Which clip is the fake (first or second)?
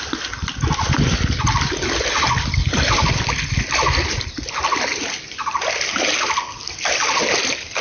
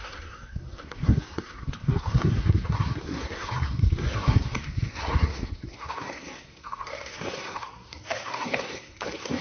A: second